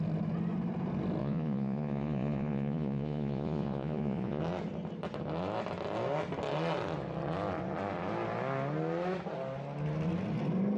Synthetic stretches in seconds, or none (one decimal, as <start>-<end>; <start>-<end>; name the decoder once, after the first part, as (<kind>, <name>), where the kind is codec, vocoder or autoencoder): 1.2-4.4 (vocoder, Vocos)